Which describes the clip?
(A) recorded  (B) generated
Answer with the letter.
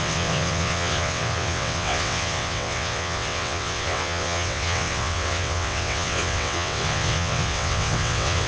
B